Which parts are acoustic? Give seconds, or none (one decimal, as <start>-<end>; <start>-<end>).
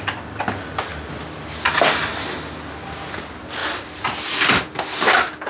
0.0-5.5